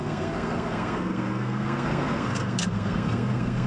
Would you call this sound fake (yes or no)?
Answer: yes